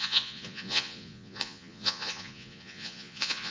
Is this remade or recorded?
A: remade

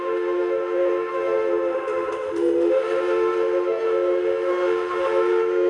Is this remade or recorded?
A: remade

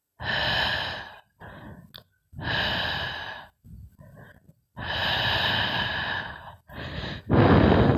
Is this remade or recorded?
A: recorded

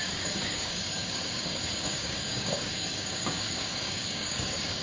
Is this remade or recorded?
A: remade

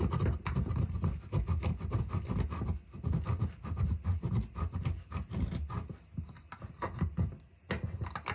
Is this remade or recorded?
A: recorded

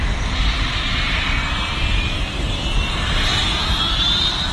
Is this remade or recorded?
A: recorded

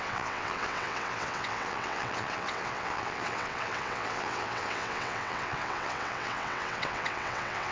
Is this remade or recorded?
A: remade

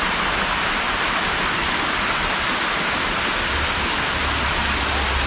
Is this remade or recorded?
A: recorded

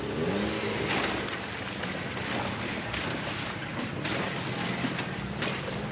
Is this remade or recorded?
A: recorded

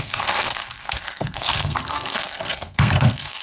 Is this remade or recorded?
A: remade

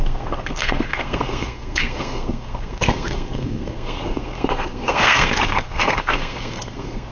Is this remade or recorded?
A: remade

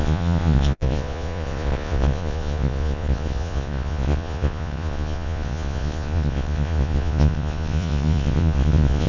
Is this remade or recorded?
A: remade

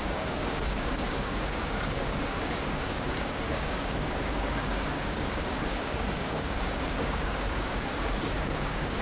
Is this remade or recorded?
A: remade